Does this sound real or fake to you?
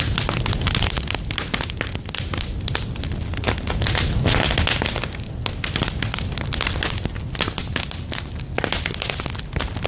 real